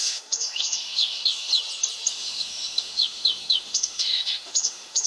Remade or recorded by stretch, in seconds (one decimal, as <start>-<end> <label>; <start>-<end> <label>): 0.0-1.5 remade; 1.5-2.1 recorded; 2.1-5.1 remade